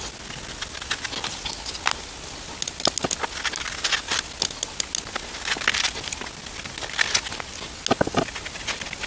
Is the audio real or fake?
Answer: real